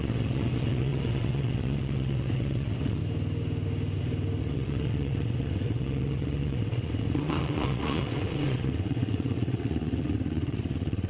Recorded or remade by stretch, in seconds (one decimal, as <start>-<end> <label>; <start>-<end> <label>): 0.0-3.0 remade; 3.0-4.4 recorded; 4.4-11.1 remade